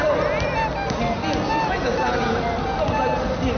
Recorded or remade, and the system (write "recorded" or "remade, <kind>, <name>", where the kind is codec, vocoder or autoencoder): recorded